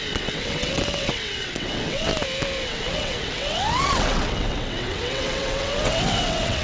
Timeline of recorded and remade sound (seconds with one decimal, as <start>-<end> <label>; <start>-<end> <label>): 0.0-2.1 remade; 2.1-2.7 recorded; 2.7-6.6 remade